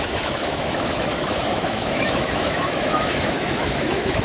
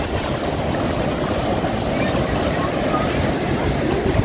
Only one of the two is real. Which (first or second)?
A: second